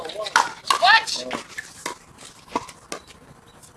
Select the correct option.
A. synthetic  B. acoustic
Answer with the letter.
B